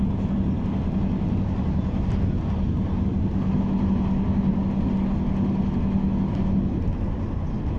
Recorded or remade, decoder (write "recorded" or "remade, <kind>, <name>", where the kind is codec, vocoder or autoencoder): recorded